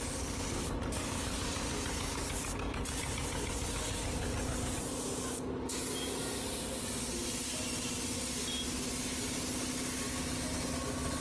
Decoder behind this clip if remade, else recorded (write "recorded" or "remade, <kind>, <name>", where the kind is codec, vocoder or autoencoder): recorded